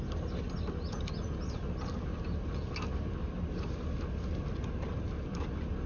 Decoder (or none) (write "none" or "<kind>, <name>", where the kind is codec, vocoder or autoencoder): none